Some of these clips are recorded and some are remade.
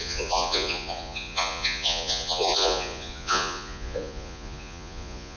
remade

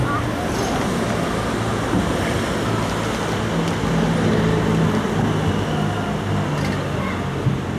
recorded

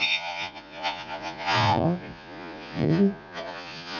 remade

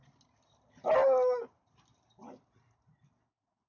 recorded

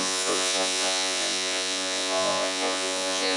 remade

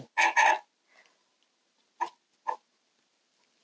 recorded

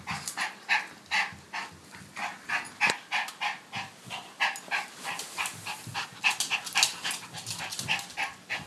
recorded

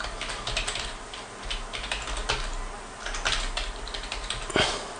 recorded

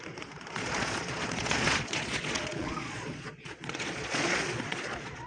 remade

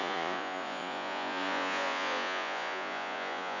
remade